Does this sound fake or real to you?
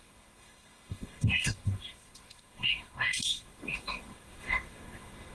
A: fake